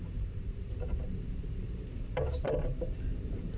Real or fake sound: fake